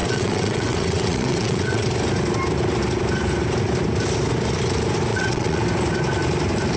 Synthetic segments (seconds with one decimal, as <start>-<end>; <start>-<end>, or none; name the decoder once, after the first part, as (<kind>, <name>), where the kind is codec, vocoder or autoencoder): 0.0-1.9 (vocoder, WaveNeXt); 5.1-5.6